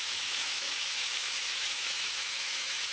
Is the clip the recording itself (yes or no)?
no